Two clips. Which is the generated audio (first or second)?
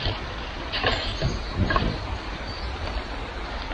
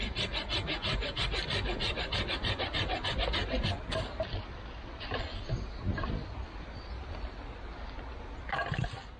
first